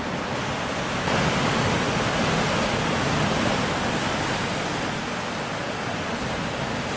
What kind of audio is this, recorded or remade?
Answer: recorded